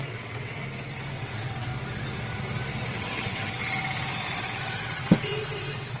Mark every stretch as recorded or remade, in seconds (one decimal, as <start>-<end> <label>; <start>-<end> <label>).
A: 0.0-0.6 remade; 0.6-1.1 recorded; 1.1-1.7 remade; 1.7-2.9 recorded; 2.9-3.6 remade; 3.6-4.3 recorded; 4.3-6.0 remade